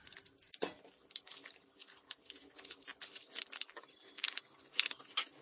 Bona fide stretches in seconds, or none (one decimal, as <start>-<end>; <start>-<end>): 0.0-5.4